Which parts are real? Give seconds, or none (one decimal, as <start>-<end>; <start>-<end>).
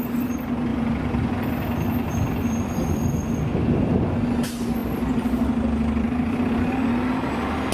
0.0-0.7; 3.4-4.8; 6.6-7.7